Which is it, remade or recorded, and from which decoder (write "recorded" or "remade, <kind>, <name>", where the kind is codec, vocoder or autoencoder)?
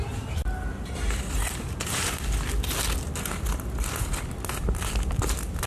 recorded